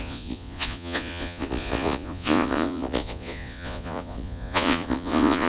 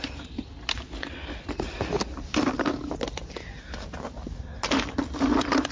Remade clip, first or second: first